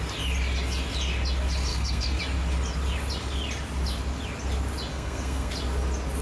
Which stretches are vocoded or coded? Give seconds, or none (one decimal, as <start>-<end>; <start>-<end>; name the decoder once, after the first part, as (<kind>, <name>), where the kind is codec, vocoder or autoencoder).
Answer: 1.7-2.2 (codec, SNAC); 4.9-5.5